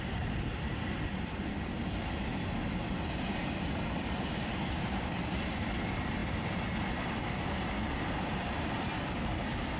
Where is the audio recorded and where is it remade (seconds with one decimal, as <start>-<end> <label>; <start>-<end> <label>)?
0.0-6.2 remade; 6.2-6.9 recorded; 6.9-9.8 remade